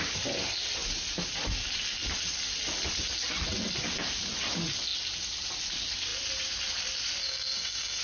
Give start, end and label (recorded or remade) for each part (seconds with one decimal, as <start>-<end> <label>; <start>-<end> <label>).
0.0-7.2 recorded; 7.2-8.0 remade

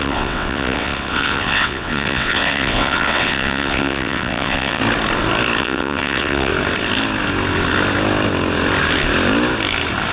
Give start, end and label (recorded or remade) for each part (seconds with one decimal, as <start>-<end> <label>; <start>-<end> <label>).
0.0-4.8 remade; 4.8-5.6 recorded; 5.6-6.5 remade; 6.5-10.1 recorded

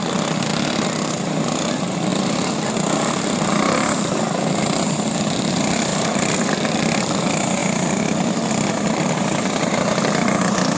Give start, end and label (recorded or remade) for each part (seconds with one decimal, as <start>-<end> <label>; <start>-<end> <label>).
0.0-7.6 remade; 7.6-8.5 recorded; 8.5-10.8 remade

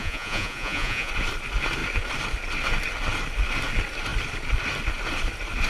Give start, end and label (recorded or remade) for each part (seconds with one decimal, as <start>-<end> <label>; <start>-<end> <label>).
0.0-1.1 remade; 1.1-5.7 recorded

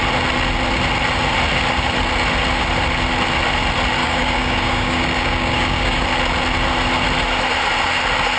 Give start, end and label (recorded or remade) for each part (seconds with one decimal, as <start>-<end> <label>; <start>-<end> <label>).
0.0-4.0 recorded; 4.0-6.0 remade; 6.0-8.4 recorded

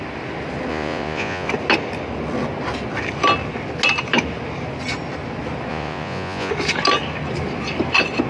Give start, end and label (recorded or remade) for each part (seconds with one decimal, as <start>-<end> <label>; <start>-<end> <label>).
0.0-0.7 recorded; 0.7-1.5 remade; 1.5-5.7 recorded; 5.7-6.5 remade; 6.5-8.3 recorded

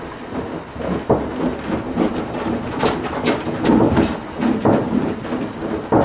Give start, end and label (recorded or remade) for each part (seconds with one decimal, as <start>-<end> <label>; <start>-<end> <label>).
0.0-1.5 recorded; 1.5-5.1 remade; 5.1-6.0 recorded